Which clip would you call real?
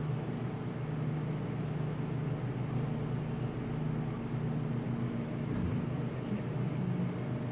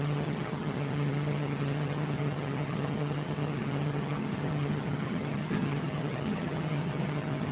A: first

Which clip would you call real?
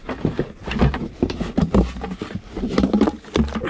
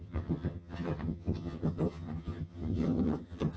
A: first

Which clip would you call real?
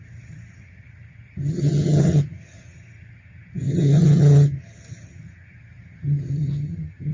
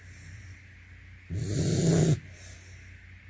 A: second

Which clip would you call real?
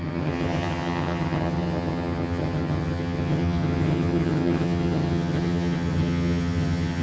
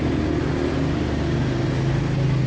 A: second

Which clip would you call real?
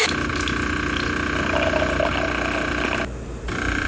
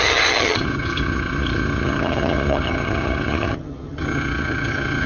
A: first